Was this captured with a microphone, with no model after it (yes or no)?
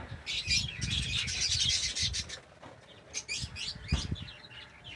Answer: yes